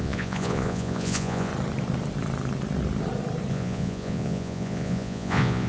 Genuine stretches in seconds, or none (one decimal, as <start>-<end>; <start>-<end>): 1.5-3.5